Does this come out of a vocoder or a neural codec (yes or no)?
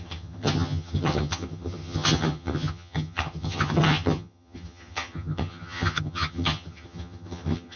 yes